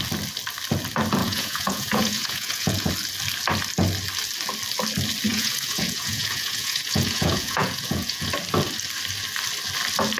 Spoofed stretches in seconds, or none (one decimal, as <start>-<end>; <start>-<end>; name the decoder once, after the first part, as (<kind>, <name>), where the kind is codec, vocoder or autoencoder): 1.2-2.9 (vocoder, Vocos); 5.3-8.3